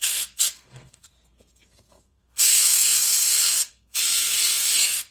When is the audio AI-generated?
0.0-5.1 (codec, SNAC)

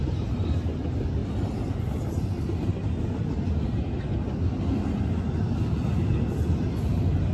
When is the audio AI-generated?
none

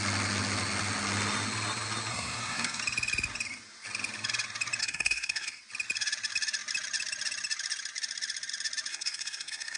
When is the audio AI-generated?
2.1-2.8 (codec, SNAC); 4.8-5.6; 8.9-9.8

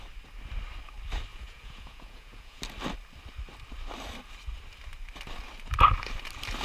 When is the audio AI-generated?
1.3-2.6 (vocoder, Vocos)

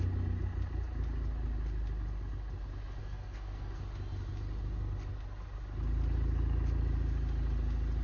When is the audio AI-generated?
3.0-3.8 (codec, SNAC)

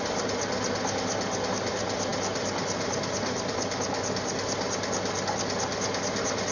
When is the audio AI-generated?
none

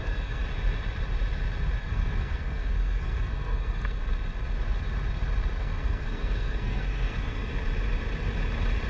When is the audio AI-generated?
0.0-0.4 (codec, SNAC); 1.8-4.1; 5.6-7.5